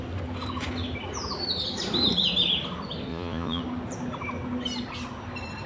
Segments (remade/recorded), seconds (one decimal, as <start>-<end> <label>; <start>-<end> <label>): 0.0-3.1 recorded; 3.1-3.6 remade; 3.6-5.7 recorded